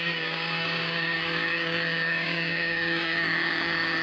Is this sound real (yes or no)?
no